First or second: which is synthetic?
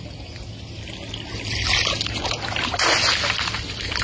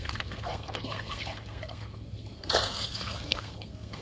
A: second